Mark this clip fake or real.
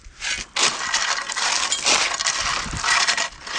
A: real